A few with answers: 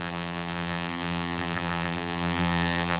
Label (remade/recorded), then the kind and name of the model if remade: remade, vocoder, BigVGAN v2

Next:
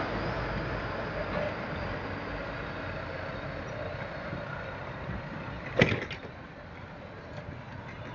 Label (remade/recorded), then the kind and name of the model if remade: recorded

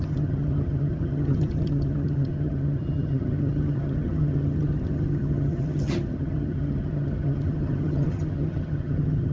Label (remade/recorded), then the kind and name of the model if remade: remade, vocoder, HiFi-GAN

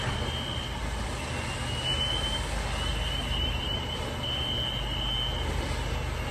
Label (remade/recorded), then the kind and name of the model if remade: recorded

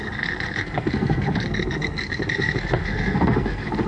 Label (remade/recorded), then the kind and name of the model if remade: remade, codec, SNAC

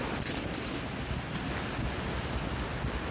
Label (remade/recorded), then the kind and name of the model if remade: recorded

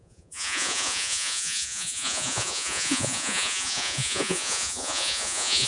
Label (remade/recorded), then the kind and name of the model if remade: remade, vocoder, Vocos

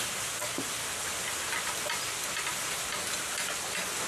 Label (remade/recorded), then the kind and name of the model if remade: recorded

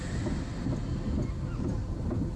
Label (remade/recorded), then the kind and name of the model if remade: recorded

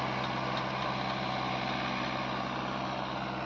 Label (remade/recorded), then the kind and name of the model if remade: recorded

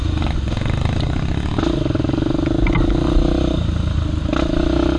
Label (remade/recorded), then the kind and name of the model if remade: recorded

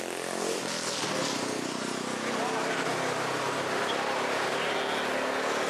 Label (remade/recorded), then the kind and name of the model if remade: recorded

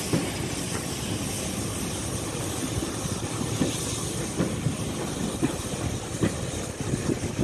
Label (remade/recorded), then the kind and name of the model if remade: recorded